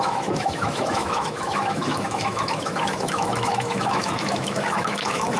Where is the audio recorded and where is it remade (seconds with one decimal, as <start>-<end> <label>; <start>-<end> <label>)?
0.0-5.4 remade